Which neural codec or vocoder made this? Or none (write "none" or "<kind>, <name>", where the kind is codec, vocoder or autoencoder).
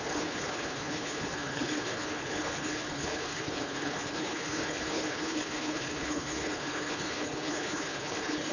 codec, HILCodec